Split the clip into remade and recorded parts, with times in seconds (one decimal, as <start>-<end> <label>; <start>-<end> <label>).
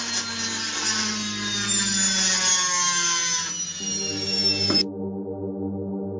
0.0-6.2 recorded